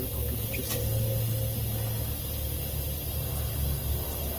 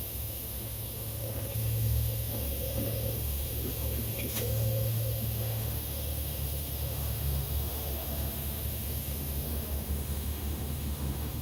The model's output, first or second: second